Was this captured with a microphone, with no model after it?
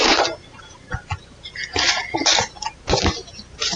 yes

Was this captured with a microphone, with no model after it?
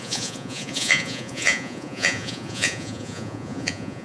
no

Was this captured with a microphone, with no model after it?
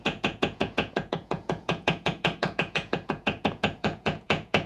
no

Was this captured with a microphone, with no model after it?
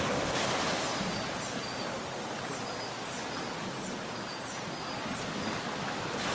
yes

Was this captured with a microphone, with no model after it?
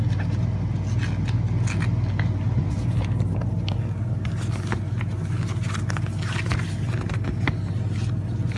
yes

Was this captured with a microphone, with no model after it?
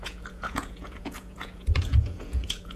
no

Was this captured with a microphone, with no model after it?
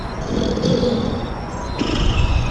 no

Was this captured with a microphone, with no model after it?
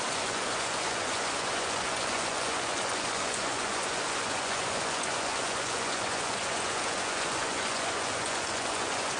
no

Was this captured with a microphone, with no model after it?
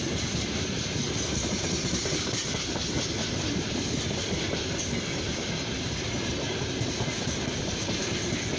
yes